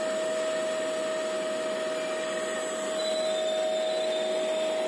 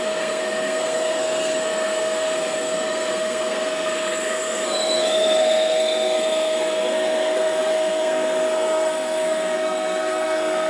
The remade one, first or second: second